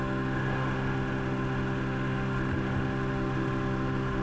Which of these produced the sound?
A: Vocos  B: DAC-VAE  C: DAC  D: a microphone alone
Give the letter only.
B